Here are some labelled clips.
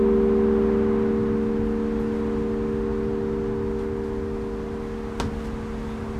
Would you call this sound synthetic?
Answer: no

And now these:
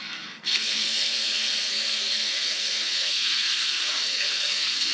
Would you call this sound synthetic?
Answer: yes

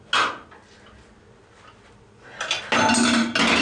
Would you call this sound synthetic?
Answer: no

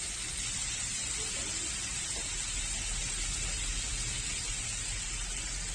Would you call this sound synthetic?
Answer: no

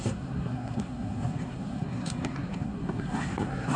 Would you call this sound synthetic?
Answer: yes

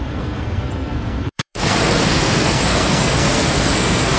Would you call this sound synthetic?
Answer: yes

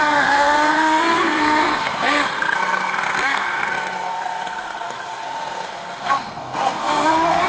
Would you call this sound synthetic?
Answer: yes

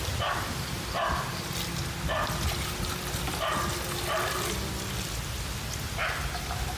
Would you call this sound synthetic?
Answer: no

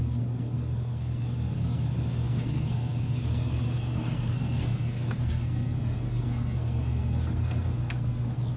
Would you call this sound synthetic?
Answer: yes